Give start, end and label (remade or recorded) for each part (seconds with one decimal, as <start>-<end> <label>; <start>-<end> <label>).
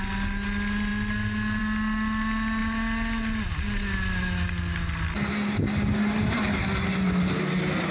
0.0-7.9 recorded